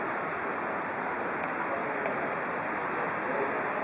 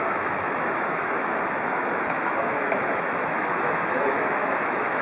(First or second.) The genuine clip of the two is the first